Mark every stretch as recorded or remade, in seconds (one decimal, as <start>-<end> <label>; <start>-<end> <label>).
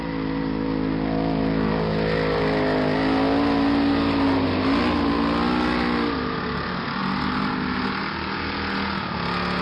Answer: 0.0-9.6 recorded